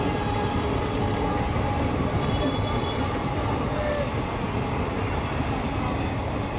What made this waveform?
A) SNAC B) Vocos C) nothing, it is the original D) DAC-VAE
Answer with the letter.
C